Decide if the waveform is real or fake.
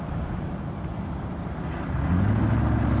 real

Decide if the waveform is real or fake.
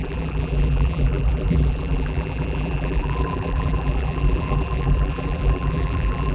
fake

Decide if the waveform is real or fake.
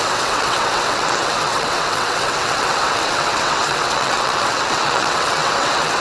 fake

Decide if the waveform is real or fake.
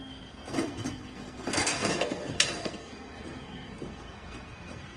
fake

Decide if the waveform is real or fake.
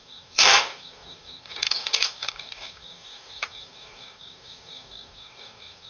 fake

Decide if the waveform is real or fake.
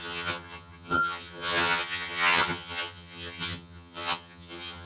fake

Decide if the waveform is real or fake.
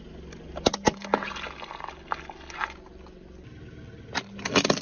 real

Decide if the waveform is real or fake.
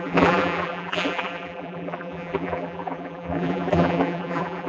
fake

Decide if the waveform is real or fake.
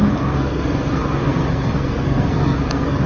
fake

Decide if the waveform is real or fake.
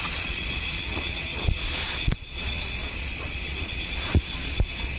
fake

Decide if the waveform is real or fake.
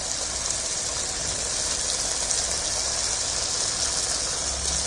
real